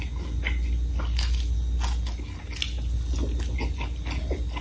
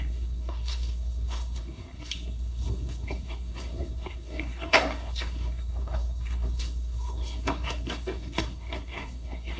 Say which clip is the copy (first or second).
second